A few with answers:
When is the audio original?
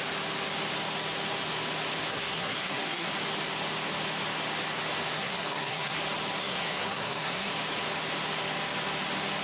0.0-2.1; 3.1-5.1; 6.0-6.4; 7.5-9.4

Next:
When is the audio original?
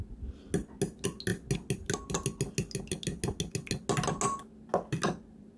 0.0-5.6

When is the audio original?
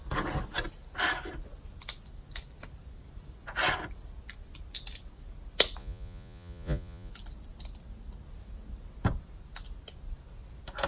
0.0-5.8; 7.1-10.9